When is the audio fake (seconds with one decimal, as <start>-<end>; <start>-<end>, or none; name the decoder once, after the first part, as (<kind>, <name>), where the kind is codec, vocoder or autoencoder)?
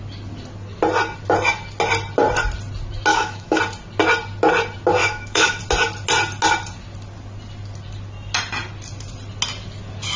3.1-3.6 (autoencoder, DAC-VAE); 5.0-5.6